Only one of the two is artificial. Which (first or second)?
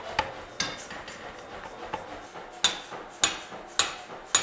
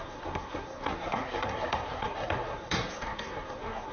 second